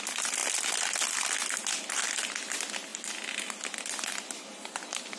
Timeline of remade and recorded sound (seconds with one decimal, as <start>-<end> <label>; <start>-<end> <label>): 0.0-5.2 recorded